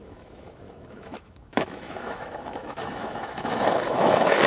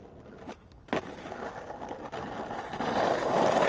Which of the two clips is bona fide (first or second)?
second